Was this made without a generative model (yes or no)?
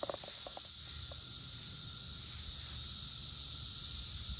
yes